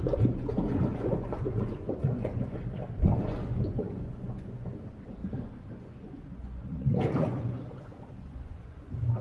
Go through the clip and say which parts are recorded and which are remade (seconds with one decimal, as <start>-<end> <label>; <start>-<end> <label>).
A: 0.0-9.2 remade